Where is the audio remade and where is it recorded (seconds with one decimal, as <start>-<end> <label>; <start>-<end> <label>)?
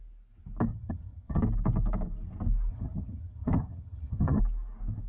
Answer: 0.0-0.7 recorded; 0.7-1.4 remade; 1.4-2.7 recorded; 2.7-4.4 remade; 4.4-5.1 recorded